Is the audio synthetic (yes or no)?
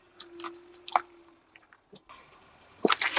no